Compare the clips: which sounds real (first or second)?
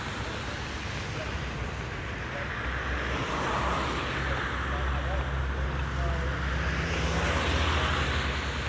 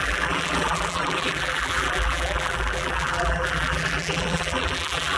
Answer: first